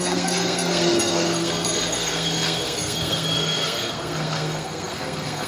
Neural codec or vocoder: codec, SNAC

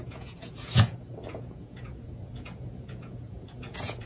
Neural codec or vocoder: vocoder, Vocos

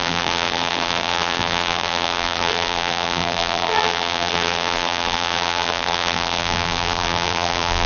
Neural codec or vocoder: vocoder, BigVGAN v2